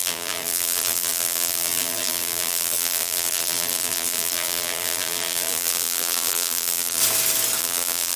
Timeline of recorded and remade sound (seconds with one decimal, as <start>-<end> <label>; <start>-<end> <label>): 0.0-7.0 remade; 7.0-7.6 recorded; 7.6-8.2 remade